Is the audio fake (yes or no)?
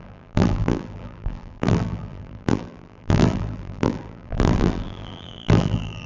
yes